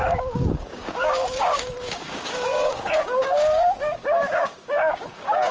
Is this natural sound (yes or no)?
no